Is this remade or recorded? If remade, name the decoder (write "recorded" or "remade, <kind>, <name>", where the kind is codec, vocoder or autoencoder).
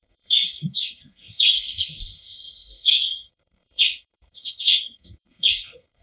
remade, codec, SNAC